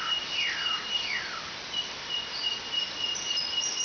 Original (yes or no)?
yes